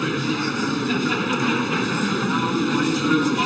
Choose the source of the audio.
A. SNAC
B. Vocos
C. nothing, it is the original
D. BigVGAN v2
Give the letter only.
C